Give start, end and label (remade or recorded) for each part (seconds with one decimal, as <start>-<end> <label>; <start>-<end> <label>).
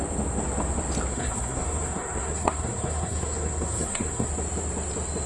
0.0-1.1 recorded; 1.1-4.3 remade; 4.3-5.3 recorded